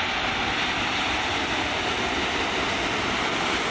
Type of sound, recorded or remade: recorded